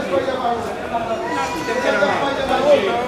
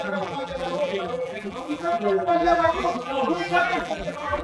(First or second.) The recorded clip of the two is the first